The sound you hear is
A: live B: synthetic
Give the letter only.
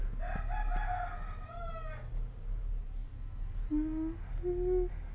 A